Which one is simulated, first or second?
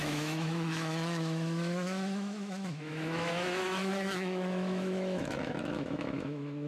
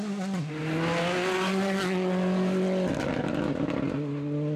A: first